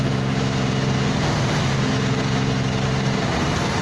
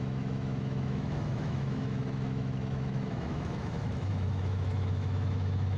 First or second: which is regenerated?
second